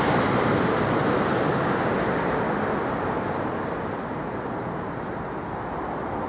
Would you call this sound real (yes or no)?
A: yes